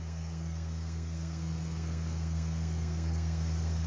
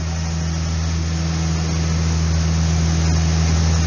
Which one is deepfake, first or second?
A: first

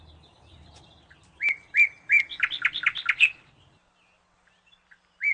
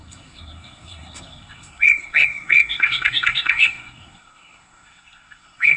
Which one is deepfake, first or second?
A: second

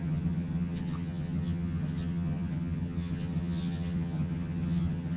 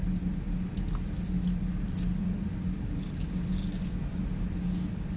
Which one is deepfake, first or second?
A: first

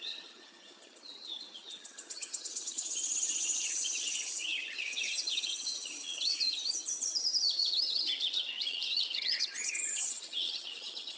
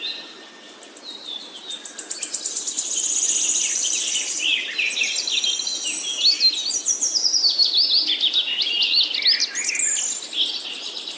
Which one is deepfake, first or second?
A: first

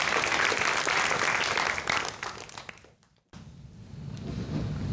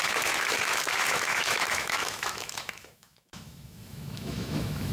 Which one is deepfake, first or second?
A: second